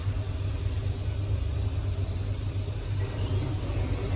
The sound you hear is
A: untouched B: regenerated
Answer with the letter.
A